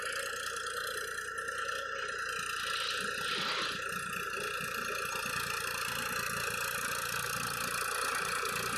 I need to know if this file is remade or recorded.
recorded